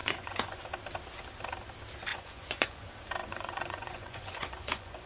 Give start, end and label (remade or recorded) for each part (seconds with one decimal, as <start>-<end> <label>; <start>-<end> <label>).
0.0-0.6 remade; 0.6-2.1 recorded; 2.1-2.8 remade; 2.8-3.2 recorded; 3.2-5.1 remade